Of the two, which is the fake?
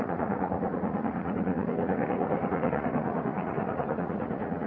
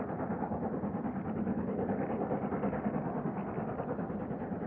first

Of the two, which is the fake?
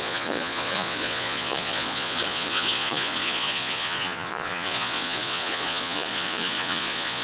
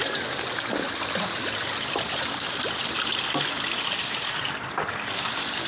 first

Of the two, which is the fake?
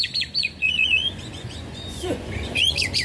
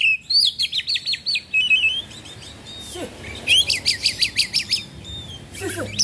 first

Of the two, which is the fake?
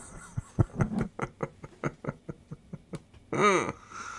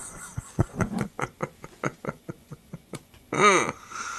second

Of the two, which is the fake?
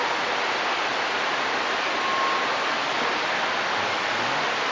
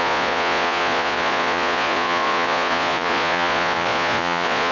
second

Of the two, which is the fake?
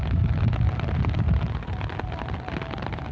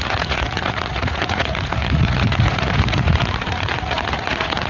second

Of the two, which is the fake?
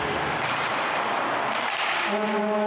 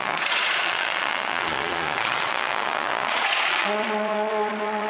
second